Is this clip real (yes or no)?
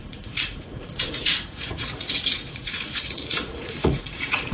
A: no